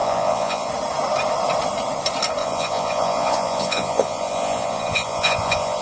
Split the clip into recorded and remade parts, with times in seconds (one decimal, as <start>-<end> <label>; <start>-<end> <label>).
0.0-0.7 remade; 0.7-2.4 recorded; 2.4-5.8 remade